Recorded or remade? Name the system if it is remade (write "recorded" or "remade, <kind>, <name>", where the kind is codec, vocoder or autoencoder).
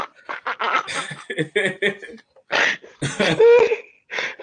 recorded